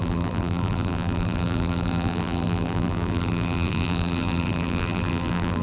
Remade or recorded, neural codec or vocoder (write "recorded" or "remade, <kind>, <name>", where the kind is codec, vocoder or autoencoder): remade, vocoder, BigVGAN v2